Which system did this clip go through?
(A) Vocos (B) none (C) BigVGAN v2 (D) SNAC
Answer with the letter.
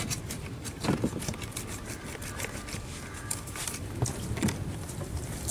C